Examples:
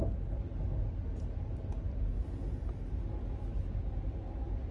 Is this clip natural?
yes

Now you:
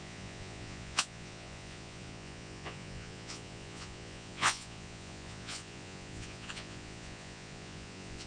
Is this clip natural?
no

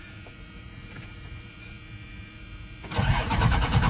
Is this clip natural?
no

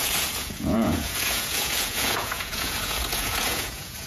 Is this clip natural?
no